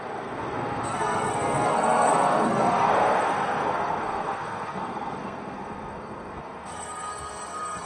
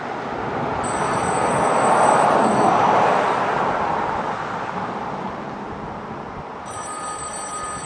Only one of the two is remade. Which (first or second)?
first